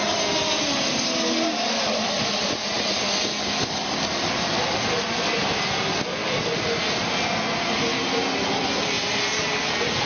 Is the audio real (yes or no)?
yes